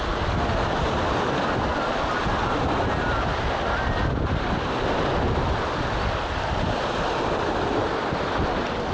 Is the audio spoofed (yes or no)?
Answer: no